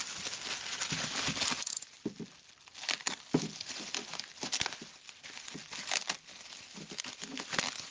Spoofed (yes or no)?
no